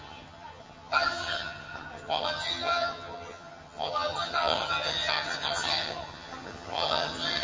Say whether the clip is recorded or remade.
remade